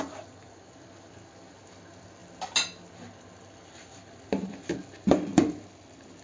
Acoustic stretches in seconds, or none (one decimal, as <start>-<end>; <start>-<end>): 0.0-6.2